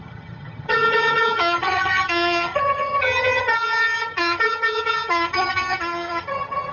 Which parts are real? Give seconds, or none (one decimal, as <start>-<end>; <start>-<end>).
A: none